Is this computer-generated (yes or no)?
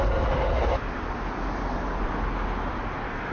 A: no